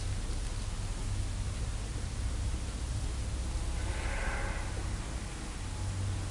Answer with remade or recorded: recorded